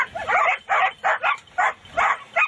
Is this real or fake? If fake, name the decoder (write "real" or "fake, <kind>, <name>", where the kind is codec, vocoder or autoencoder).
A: real